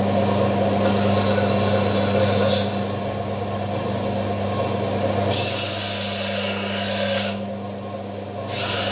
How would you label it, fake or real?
real